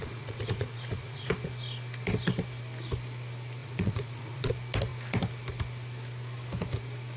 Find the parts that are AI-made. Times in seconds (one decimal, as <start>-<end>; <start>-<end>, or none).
0.0-1.3; 3.6-4.5